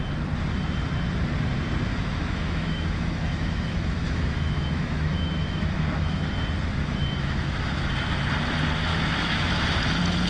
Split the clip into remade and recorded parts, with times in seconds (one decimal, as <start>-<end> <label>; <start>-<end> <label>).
0.0-1.9 recorded; 1.9-6.2 remade; 6.2-6.8 recorded; 6.8-7.9 remade; 7.9-8.9 recorded; 8.9-9.5 remade; 9.5-10.3 recorded